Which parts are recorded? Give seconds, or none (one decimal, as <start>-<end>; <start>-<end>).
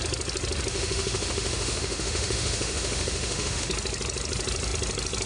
0.0-0.7; 3.7-5.3